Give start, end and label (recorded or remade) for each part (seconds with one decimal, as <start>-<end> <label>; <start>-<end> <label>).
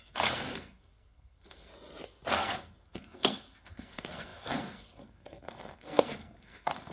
0.0-1.7 remade; 1.7-2.3 recorded; 2.3-6.9 remade